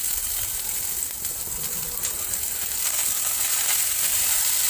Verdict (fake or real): real